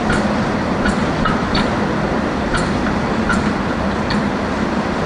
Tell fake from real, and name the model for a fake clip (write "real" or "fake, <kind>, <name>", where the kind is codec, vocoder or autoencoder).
real